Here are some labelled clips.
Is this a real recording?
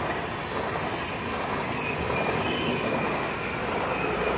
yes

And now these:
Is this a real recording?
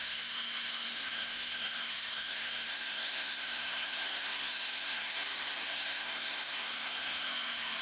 no